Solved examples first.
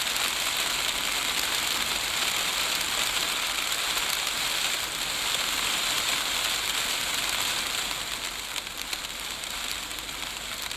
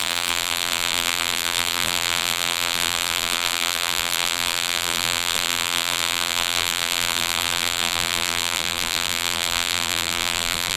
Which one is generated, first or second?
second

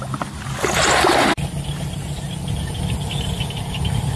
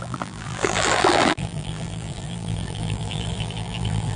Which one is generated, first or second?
second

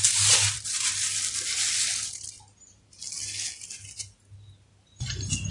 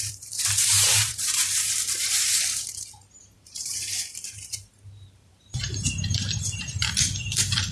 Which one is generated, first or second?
second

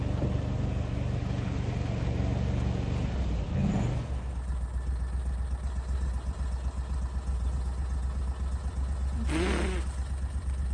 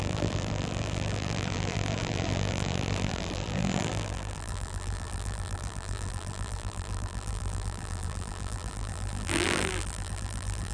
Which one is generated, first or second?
second